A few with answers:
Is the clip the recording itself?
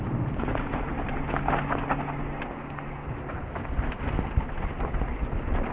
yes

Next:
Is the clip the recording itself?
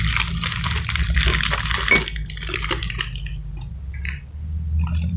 yes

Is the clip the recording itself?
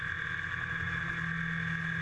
yes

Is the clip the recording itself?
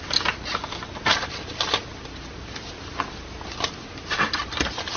yes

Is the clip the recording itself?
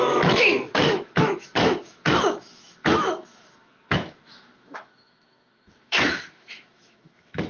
no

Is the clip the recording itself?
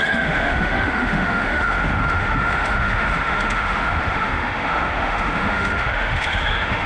no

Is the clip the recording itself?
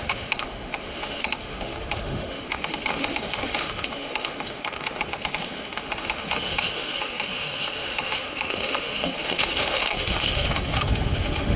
no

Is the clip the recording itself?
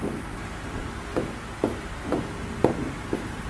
yes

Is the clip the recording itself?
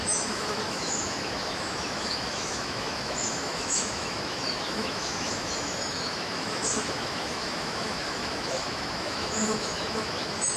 no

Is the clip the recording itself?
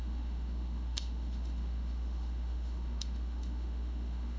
no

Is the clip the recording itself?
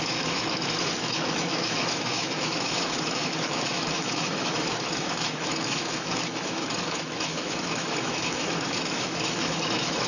no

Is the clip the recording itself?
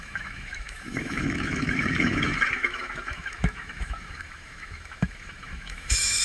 no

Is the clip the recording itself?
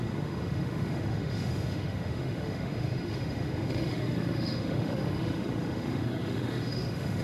no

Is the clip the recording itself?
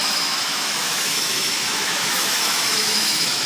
no